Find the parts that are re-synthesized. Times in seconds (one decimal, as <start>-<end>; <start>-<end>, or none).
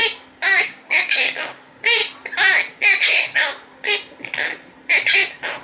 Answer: 0.6-2.0; 3.0-3.4